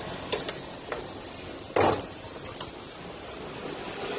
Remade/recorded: recorded